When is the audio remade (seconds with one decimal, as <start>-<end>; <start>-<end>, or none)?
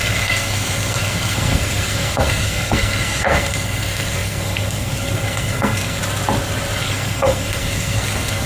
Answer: 0.0-6.0; 6.8-8.5